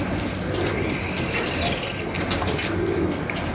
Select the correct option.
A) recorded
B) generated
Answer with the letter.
A